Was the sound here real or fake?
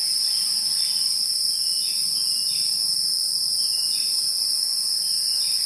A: real